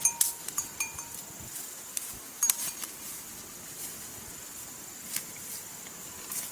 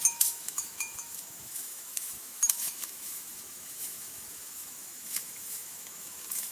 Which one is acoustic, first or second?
first